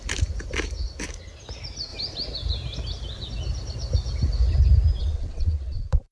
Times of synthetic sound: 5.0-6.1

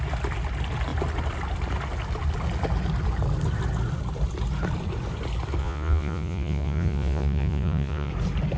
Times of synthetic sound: 5.6-8.1

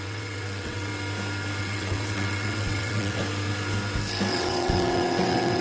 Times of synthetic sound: 0.0-0.9; 1.6-3.2; 4.3-5.6